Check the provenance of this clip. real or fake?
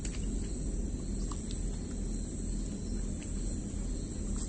real